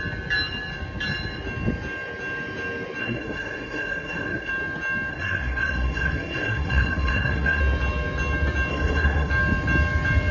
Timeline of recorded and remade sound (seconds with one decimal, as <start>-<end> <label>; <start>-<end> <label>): 0.0-3.0 recorded; 3.0-4.5 remade; 4.5-5.1 recorded; 5.1-7.6 remade; 7.6-8.7 recorded; 8.7-9.3 remade; 9.3-10.3 recorded